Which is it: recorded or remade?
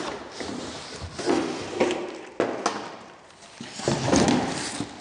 recorded